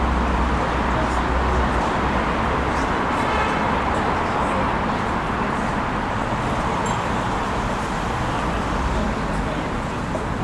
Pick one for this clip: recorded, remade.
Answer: recorded